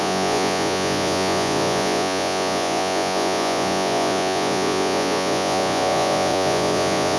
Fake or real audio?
fake